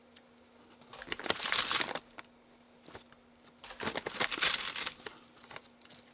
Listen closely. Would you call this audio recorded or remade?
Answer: recorded